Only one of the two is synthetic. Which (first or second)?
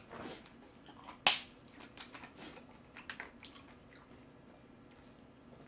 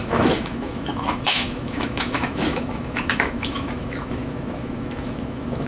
second